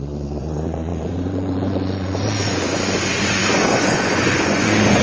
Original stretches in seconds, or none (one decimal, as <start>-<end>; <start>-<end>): none